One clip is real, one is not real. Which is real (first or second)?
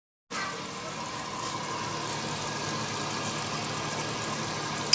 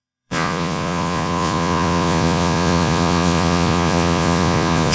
first